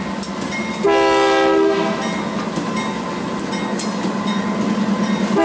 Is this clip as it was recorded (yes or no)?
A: yes